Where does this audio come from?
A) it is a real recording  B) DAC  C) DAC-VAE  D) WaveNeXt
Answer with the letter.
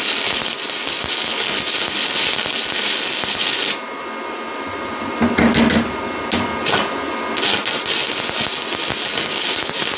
A